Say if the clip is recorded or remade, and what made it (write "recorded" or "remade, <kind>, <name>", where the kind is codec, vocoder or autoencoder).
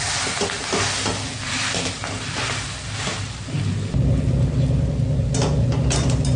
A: recorded